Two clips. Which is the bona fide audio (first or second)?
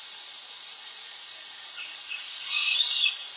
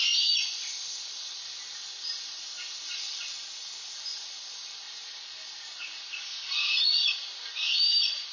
second